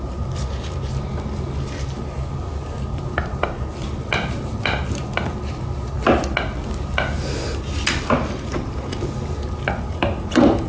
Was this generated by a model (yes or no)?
no